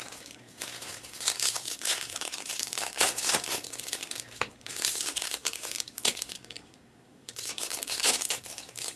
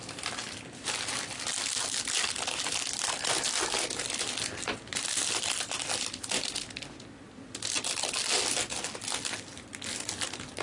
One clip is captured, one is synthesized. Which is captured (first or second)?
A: second